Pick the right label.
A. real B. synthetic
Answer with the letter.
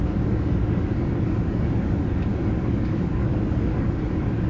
B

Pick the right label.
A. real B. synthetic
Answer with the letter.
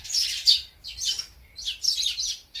A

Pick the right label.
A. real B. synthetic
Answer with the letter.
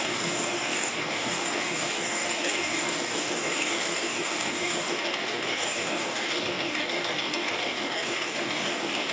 B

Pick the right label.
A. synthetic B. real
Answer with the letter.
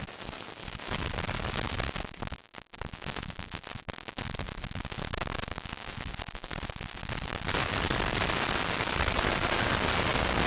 B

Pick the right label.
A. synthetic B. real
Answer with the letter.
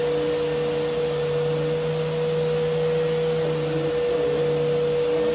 B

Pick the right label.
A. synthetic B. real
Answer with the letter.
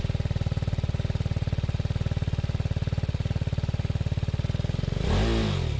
B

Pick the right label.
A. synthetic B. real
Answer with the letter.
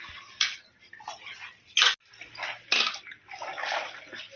B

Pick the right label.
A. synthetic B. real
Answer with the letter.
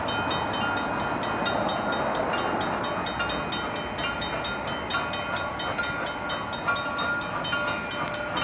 B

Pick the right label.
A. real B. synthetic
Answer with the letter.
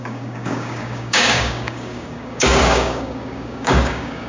B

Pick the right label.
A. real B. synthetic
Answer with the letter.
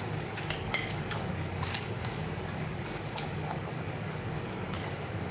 B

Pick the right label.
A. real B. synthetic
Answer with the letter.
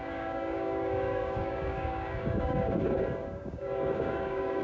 B